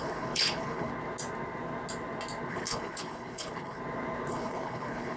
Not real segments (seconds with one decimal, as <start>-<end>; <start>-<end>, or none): 0.0-0.9; 2.5-3.8; 4.3-5.2